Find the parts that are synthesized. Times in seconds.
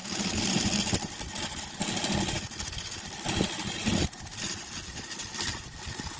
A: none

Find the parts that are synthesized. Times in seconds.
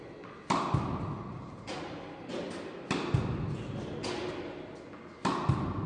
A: none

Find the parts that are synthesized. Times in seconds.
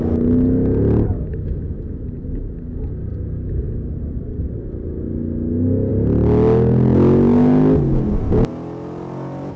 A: none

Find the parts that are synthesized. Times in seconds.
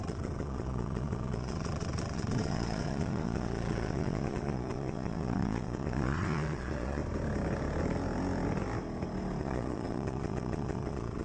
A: 0.0-7.0; 9.4-11.2